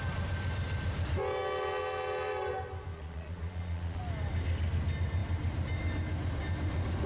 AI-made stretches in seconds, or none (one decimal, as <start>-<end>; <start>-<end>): 2.9-4.0